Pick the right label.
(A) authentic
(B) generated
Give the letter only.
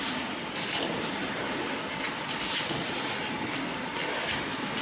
A